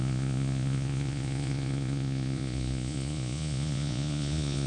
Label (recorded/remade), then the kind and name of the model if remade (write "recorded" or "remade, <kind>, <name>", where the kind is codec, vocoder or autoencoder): remade, vocoder, Vocos